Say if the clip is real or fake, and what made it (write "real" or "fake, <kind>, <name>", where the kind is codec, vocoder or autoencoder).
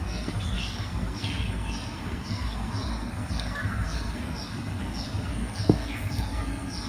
fake, codec, SNAC